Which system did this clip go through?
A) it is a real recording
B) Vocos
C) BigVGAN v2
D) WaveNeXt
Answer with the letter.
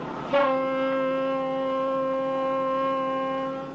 A